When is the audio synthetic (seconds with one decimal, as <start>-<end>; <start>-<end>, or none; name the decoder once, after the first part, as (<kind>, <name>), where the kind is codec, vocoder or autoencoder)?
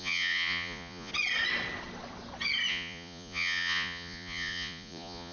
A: 0.0-1.1 (vocoder, Vocos); 2.7-5.3